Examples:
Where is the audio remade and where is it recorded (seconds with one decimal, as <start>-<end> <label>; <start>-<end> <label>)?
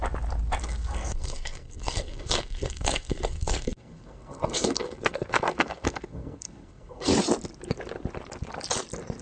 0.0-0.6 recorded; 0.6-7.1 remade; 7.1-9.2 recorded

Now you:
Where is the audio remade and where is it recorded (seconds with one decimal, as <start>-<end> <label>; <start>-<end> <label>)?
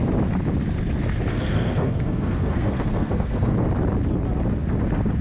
0.0-1.3 recorded; 1.3-3.5 remade; 3.5-5.2 recorded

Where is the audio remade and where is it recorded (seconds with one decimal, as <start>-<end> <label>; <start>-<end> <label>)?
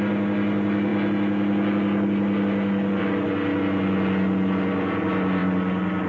0.0-6.1 recorded